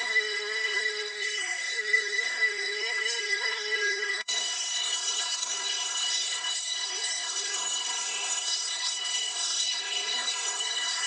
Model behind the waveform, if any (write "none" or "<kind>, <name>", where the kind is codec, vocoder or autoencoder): codec, SNAC